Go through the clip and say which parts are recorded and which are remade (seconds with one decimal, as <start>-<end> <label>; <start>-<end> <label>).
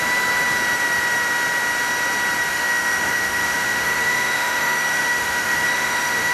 0.0-2.5 recorded; 2.5-6.3 remade